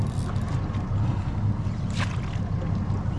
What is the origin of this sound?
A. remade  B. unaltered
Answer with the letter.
B